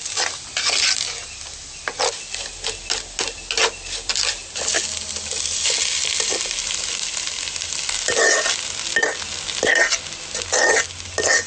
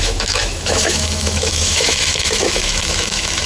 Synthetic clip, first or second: second